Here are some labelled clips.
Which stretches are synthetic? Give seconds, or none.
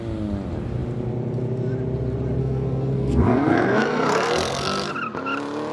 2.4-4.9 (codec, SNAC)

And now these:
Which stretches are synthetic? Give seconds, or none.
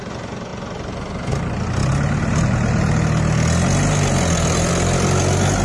none